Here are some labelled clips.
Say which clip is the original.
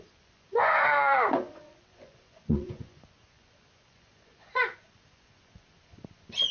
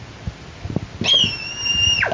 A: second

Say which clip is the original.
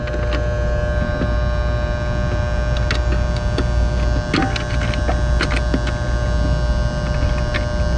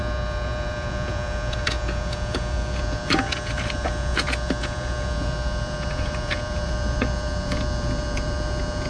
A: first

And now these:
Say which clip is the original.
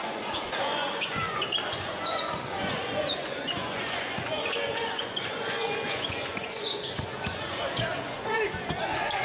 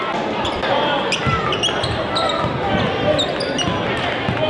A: second